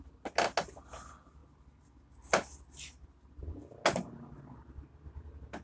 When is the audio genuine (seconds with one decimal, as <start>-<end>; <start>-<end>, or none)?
0.0-5.6